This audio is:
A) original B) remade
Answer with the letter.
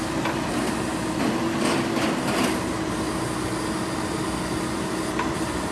A